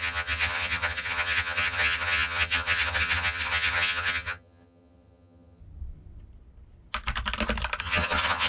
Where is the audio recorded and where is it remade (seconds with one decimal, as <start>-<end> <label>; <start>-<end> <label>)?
0.0-5.6 remade; 5.6-7.8 recorded; 7.8-8.5 remade